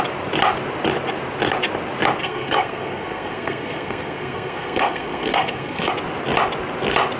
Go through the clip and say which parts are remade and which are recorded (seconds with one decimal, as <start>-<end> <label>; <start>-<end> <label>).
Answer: 0.0-2.2 recorded; 2.2-5.9 remade; 5.9-7.2 recorded